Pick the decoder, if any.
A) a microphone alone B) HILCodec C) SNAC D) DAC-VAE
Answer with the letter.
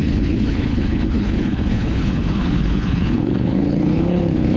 B